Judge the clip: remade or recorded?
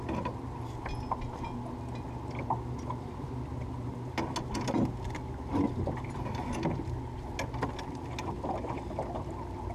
recorded